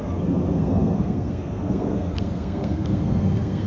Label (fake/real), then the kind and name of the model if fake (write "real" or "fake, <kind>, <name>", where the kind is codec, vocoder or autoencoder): fake, codec, SNAC